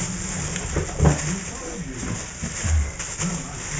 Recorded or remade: recorded